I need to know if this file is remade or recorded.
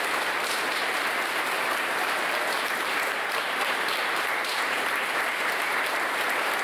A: remade